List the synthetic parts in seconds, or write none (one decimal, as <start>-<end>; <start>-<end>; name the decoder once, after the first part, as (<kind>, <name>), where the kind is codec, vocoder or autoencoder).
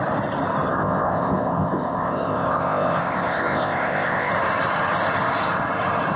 0.7-4.3 (codec, ZipCodec)